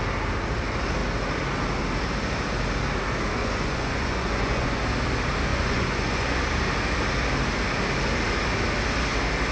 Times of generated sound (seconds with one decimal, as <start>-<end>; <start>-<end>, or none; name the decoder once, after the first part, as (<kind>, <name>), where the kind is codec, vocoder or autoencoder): 3.4-4.8 (vocoder, Vocos); 5.5-6.4